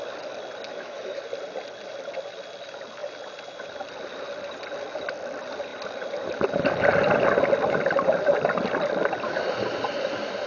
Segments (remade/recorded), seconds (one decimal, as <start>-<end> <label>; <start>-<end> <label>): 0.0-0.7 recorded; 0.7-1.2 remade; 1.2-10.5 recorded